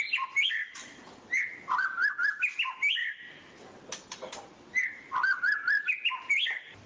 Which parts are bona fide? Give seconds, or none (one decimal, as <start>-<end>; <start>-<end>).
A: 0.0-6.9